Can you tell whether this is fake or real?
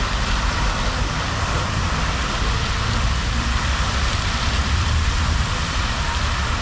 fake